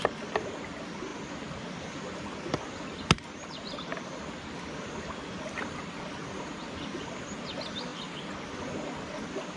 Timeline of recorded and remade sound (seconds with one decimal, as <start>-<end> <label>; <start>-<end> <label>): 0.0-9.6 recorded